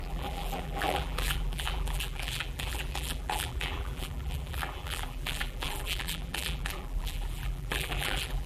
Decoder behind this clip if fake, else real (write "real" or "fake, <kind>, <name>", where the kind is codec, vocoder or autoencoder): fake, vocoder, BigVGAN v2